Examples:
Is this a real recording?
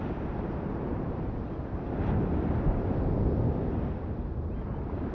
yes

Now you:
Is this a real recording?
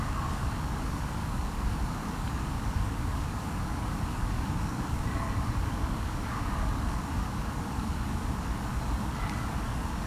no